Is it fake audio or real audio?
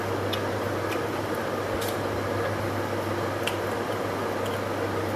real